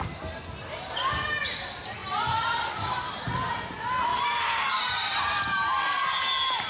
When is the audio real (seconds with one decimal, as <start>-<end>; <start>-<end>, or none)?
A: 0.0-0.6; 1.4-4.1; 4.8-6.7